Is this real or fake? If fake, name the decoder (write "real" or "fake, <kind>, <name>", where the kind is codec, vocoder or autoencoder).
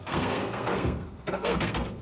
fake, codec, SNAC